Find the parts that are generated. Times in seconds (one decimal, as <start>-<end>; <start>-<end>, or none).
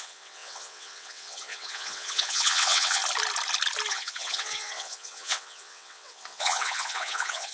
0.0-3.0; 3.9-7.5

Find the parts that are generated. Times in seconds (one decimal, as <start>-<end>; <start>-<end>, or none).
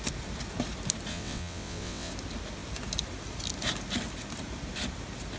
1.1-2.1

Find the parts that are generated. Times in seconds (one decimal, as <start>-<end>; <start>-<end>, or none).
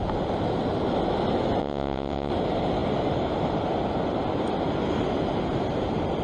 1.6-2.3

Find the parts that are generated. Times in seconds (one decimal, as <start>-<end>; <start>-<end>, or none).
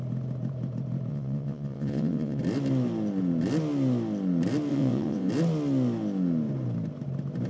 1.1-2.4; 4.7-5.3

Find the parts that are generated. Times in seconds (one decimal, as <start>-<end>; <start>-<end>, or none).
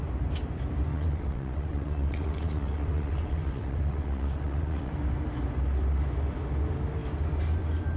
0.9-4.9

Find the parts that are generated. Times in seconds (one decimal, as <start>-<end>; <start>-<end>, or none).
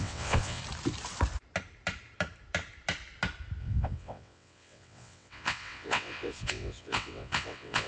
0.0-0.6; 3.6-7.9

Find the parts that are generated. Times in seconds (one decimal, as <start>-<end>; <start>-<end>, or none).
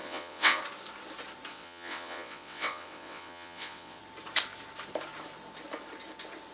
0.0-0.6; 1.5-4.0